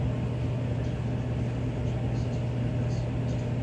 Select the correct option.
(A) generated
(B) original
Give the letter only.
B